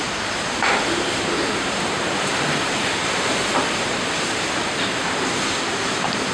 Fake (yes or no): yes